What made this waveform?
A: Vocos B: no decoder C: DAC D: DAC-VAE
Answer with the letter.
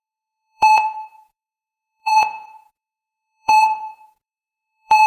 A